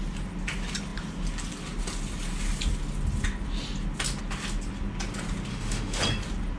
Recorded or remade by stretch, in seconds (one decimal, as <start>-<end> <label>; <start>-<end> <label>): 0.0-5.5 recorded; 5.5-6.0 remade; 6.0-6.6 recorded